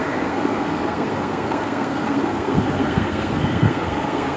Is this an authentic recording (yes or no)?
no